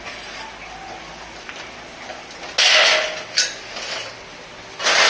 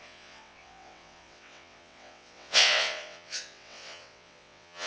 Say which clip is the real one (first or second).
first